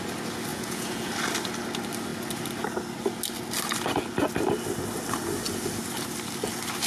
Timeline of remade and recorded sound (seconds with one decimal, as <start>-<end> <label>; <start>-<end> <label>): 0.0-0.5 recorded; 0.5-1.1 remade; 1.1-6.9 recorded